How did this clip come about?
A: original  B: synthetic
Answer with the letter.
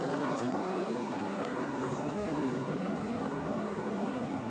B